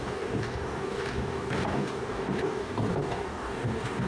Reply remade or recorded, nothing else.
remade